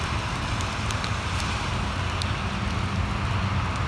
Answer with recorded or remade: recorded